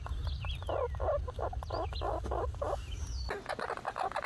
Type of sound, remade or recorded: recorded